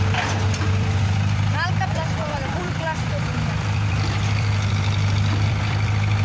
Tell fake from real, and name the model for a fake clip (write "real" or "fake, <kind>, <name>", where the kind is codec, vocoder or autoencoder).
fake, vocoder, BigVGAN v2